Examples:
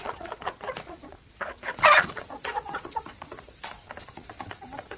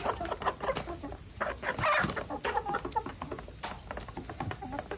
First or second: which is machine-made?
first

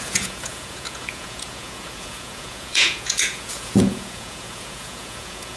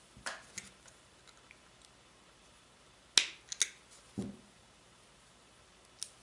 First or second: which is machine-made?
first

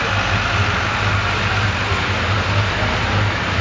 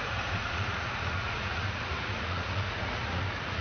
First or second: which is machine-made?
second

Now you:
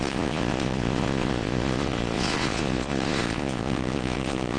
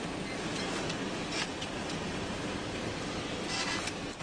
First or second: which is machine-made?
first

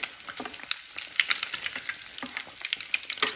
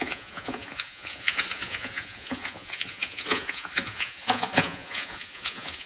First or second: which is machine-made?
second